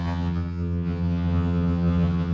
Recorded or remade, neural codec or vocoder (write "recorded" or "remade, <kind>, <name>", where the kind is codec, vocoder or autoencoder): remade, vocoder, HiFi-GAN